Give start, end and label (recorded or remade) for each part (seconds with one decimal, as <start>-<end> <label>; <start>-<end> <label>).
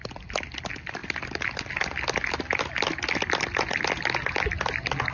0.0-5.1 recorded